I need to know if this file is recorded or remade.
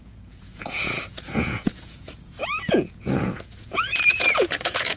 remade